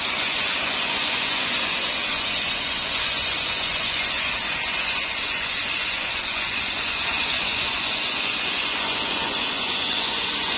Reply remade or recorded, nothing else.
remade